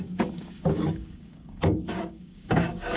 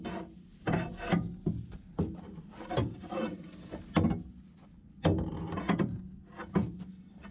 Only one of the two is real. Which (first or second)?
second